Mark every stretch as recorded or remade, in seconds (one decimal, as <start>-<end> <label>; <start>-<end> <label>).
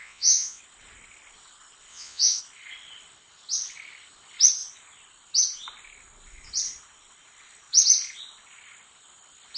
0.0-0.6 remade; 0.6-1.9 recorded; 1.9-2.4 remade; 2.4-9.6 recorded